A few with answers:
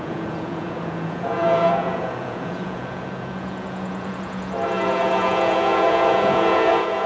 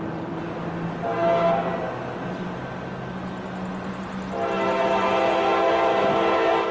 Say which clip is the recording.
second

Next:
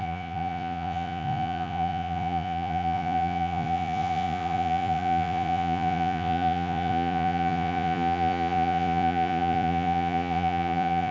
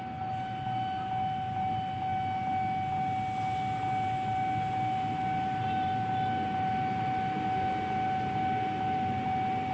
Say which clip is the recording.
second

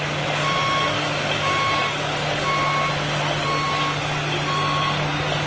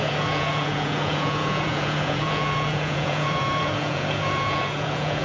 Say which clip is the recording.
first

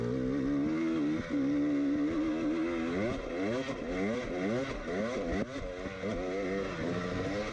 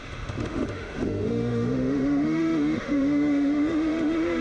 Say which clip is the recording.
first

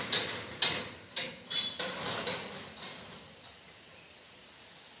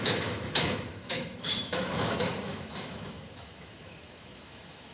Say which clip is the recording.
first